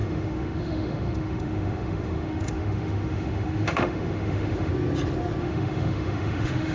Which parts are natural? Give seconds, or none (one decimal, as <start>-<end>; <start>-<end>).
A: 4.7-5.4